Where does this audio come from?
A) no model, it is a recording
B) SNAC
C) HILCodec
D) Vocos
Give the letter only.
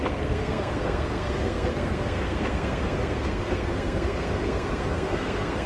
B